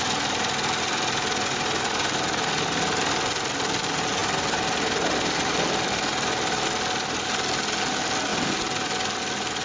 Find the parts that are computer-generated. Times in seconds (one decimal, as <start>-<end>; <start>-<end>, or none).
none